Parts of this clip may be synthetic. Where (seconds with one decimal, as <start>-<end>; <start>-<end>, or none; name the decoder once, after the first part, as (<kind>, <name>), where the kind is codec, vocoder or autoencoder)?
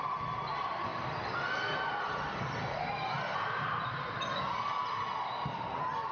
none